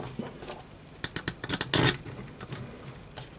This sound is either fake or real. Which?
real